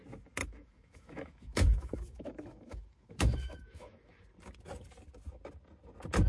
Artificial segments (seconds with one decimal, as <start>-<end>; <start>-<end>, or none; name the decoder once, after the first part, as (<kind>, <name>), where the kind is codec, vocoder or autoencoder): 0.4-4.2 (autoencoder, DAC-VAE)

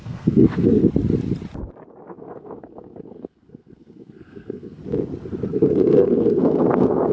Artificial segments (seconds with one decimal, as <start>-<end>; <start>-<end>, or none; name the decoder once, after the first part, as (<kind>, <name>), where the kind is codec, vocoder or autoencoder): 0.0-0.8 (codec, SNAC); 2.1-4.8; 5.5-7.1